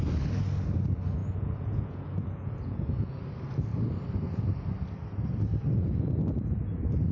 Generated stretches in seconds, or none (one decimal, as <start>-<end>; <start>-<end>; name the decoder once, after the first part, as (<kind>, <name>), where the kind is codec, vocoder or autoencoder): 1.2-3.2 (vocoder, Vocos)